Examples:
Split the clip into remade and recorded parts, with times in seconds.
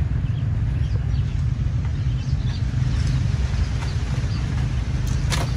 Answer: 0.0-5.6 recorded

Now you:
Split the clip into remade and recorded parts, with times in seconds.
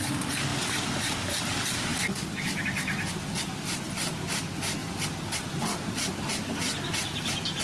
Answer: 0.0-0.5 recorded; 0.5-1.4 remade; 1.4-4.8 recorded; 4.8-6.2 remade; 6.2-7.6 recorded